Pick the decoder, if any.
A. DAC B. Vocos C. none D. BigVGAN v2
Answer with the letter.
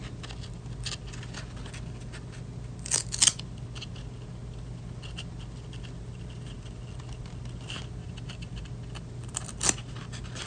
C